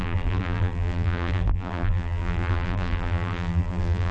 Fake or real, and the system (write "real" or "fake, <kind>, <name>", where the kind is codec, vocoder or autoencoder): fake, vocoder, BigVGAN v2